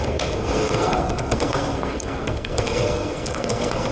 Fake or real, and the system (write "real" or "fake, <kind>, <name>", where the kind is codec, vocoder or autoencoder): fake, codec, SNAC